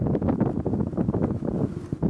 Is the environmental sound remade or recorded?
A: recorded